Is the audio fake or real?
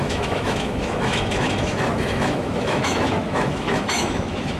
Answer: fake